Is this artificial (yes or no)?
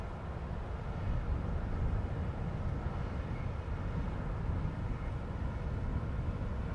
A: no